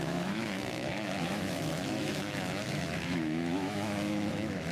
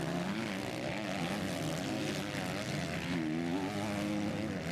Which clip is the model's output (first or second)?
first